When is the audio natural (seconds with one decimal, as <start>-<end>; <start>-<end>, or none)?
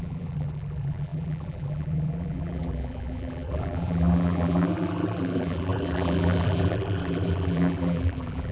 none